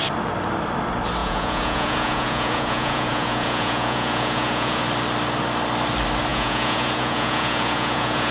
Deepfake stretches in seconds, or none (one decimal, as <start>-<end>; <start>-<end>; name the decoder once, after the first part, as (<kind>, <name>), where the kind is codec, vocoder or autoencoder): 1.2-4.8 (vocoder, Vocos); 6.3-8.3